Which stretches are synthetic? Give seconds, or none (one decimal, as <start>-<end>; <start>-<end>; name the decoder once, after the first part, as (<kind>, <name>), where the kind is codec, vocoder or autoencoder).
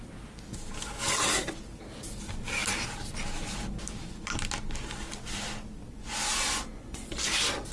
5.9-7.1 (vocoder, Vocos)